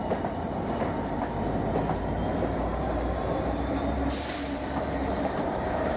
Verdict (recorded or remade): remade